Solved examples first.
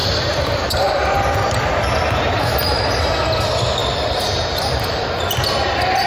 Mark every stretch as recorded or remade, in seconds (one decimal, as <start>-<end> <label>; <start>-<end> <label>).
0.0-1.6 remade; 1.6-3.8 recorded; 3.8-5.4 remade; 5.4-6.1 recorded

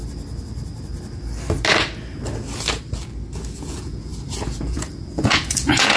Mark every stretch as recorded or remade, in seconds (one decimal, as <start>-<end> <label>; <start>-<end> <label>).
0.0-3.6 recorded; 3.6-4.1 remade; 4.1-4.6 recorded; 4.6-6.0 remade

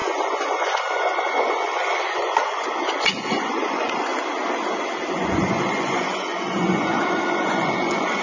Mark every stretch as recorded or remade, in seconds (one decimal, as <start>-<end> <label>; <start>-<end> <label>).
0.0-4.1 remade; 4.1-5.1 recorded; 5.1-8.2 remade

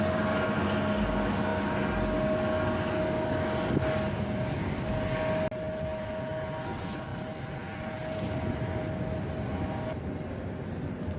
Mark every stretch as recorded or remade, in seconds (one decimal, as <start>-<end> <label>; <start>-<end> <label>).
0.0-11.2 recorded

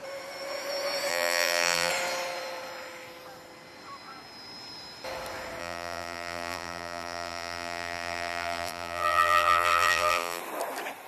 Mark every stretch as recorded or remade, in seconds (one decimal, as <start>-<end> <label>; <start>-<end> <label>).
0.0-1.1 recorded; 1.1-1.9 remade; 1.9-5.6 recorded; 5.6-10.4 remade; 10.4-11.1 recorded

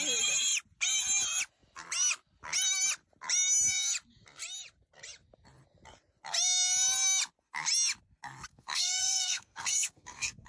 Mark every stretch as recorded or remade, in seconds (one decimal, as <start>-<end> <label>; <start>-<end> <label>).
0.0-8.5 recorded; 8.5-10.5 remade

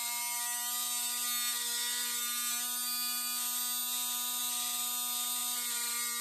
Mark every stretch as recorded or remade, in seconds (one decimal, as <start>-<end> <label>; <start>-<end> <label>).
0.0-6.2 recorded

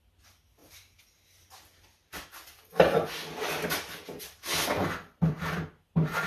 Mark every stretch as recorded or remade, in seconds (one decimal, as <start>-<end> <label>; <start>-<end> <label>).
0.0-6.3 recorded